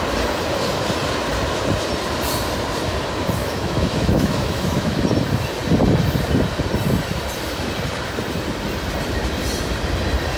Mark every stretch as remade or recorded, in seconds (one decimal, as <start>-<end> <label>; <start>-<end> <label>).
0.0-3.4 recorded; 3.4-5.0 remade; 5.0-10.4 recorded

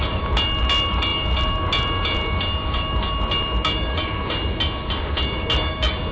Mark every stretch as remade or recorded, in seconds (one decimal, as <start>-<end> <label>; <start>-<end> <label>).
0.0-6.1 recorded

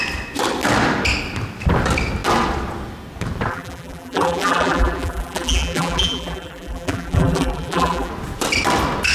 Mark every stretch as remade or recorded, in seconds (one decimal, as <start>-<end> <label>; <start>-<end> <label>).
0.0-3.5 recorded; 3.5-8.1 remade; 8.1-9.1 recorded

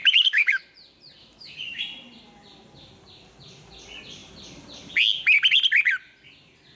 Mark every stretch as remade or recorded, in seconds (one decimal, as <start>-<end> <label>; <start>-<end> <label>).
0.0-0.6 remade; 0.6-1.2 recorded; 1.2-1.8 remade; 1.8-6.8 recorded

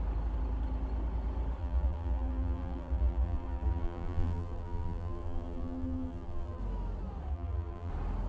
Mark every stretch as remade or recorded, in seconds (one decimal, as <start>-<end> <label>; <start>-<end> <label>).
0.0-1.6 recorded; 1.6-6.6 remade; 6.6-7.3 recorded; 7.3-7.9 remade; 7.9-8.3 recorded

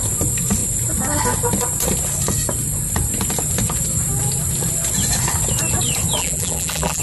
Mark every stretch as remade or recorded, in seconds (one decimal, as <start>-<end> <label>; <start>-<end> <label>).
0.0-6.2 recorded; 6.2-7.0 remade